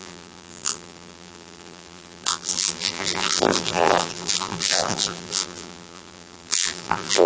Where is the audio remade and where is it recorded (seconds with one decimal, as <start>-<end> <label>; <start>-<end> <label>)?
0.0-7.3 remade